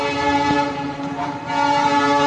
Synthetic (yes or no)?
yes